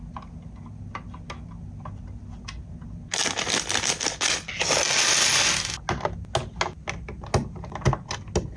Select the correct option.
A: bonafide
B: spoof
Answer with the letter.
A